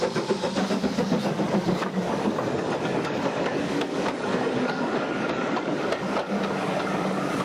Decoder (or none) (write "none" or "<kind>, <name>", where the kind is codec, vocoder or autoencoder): codec, DAC